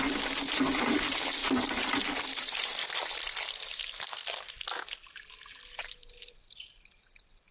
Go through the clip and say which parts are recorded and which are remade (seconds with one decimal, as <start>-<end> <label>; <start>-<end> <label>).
0.0-4.2 recorded; 4.2-6.3 remade; 6.3-7.5 recorded

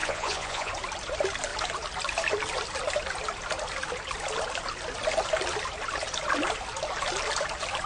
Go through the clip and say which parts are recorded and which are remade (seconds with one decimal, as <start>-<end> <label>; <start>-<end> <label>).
0.0-0.7 remade; 0.7-7.9 recorded

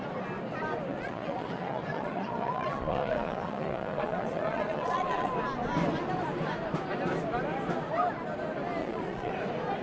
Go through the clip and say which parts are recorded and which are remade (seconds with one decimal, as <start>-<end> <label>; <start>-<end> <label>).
0.0-0.9 recorded; 0.9-5.3 remade; 5.3-8.8 recorded; 8.8-9.3 remade; 9.3-9.8 recorded

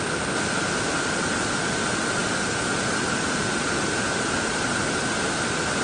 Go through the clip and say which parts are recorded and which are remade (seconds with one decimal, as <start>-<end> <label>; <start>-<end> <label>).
0.0-5.8 remade

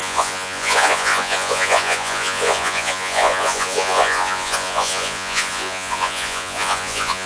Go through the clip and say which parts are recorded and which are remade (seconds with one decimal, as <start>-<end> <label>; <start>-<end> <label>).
0.0-7.3 remade

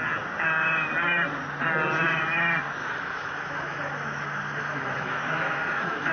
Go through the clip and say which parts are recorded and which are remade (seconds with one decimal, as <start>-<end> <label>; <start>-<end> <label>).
0.0-2.8 recorded; 2.8-6.1 remade

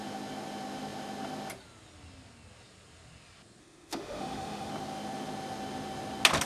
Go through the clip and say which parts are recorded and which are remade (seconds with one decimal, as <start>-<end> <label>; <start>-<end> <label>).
0.0-3.6 recorded; 3.6-4.7 remade; 4.7-6.5 recorded

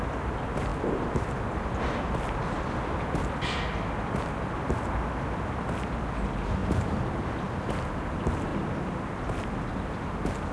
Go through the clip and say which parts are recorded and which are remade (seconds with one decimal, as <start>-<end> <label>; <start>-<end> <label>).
0.0-6.6 recorded; 6.6-7.4 remade; 7.4-10.5 recorded